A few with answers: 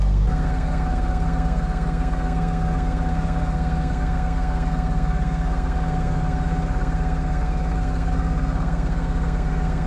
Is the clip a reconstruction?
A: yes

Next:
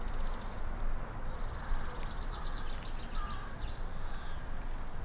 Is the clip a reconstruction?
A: no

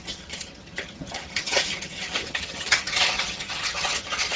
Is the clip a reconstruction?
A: yes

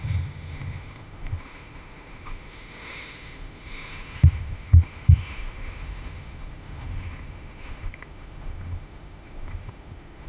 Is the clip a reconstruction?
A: yes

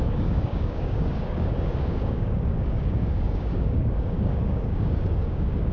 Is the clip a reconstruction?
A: yes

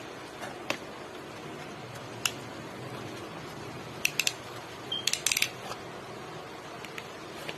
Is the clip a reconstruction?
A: no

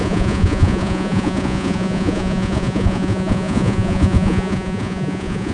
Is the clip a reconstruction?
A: yes